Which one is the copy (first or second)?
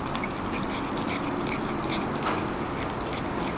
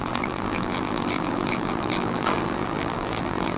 second